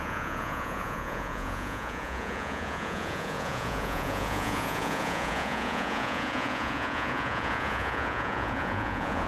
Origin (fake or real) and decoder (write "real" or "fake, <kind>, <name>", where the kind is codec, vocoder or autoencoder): fake, vocoder, Vocos